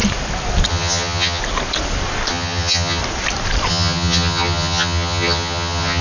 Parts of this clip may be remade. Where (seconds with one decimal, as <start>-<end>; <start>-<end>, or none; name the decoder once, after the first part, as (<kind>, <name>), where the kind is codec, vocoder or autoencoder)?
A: 0.7-1.4 (vocoder, HiFi-GAN); 2.3-3.0; 3.7-6.0